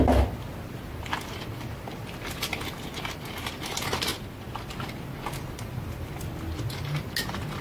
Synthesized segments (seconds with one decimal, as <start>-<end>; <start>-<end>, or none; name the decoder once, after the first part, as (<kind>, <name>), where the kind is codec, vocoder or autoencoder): none